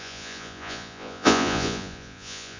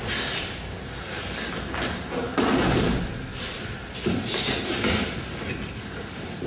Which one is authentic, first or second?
second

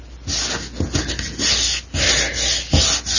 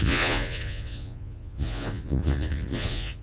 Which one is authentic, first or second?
first